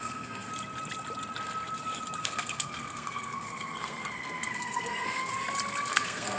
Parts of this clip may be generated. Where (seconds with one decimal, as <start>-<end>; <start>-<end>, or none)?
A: 0.0-0.5; 2.2-5.3; 5.9-6.4